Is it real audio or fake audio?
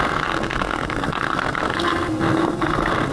fake